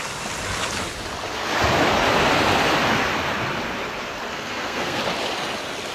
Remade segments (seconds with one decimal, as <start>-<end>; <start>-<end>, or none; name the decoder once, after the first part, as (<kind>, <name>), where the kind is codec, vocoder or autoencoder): 4.3-5.0 (codec, SNAC)